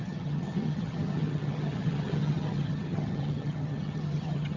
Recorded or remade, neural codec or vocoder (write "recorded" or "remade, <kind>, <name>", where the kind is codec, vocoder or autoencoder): remade, vocoder, HiFi-GAN